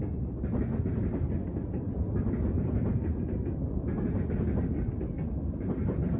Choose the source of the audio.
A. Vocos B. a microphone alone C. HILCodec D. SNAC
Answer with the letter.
B